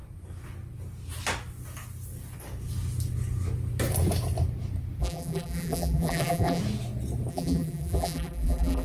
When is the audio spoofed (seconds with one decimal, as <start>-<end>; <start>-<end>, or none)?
5.0-6.6; 7.3-8.8